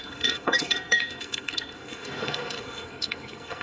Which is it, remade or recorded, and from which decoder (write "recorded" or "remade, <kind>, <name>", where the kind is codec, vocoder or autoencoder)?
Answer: remade, codec, SNAC